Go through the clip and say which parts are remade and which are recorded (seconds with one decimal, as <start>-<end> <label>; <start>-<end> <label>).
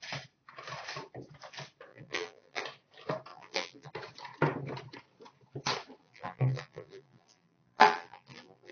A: 0.0-1.9 recorded; 1.9-2.6 remade; 2.6-3.3 recorded; 3.3-3.9 remade; 3.9-6.0 recorded; 6.0-8.7 remade